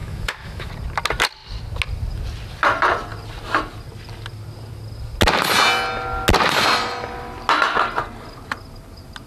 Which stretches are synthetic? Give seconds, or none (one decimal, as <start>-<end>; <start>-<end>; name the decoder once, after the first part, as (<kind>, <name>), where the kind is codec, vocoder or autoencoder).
0.0-0.7 (autoencoder, DAC-VAE)